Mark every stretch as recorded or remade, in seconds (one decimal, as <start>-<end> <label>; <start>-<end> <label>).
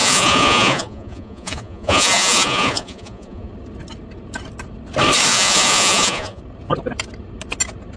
0.0-3.5 remade; 3.5-5.3 recorded; 5.3-6.4 remade; 6.4-8.0 recorded